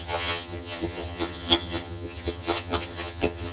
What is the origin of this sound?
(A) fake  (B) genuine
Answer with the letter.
A